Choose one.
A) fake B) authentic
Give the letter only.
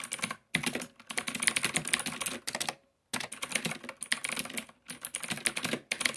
B